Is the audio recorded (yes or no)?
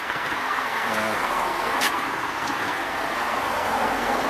no